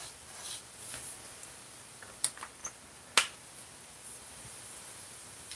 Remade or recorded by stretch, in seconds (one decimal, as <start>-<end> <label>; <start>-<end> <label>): 0.0-2.6 remade; 2.6-4.2 recorded; 4.2-5.6 remade

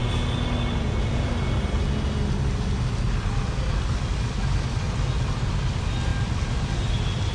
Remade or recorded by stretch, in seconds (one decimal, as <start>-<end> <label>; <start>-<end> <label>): 0.0-3.5 recorded; 3.5-6.1 remade; 6.1-7.3 recorded

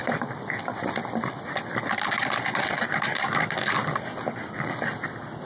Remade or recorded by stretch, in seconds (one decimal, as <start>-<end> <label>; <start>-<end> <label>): 0.0-3.3 remade; 3.3-5.5 recorded

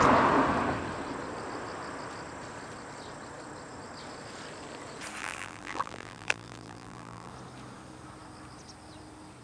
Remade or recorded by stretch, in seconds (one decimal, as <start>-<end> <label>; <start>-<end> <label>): 0.0-5.2 recorded; 5.2-7.3 remade; 7.3-9.4 recorded

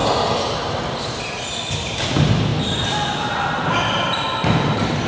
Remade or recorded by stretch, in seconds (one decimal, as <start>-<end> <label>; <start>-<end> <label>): 0.0-5.1 recorded

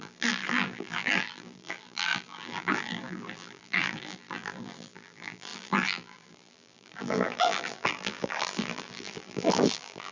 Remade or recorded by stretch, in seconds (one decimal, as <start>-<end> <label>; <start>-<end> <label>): 0.0-10.1 remade